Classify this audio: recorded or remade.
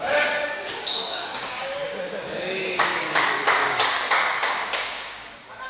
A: remade